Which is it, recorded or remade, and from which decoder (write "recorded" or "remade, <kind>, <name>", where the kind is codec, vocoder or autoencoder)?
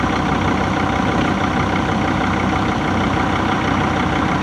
remade, vocoder, BigVGAN v2